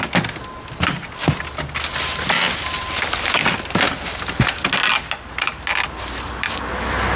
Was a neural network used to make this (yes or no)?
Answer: no